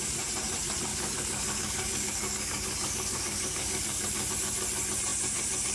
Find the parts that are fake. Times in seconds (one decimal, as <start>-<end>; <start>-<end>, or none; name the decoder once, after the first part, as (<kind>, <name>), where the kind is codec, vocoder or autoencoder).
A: 0.9-4.3 (codec, DAC)